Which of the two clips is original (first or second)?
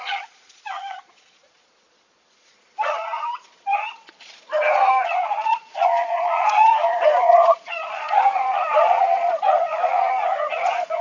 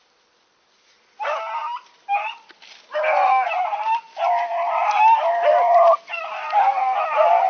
second